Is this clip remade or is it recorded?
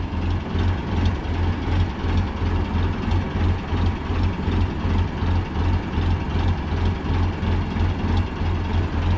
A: recorded